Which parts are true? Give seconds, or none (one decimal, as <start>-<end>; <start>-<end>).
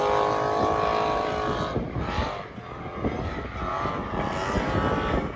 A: 0.0-5.4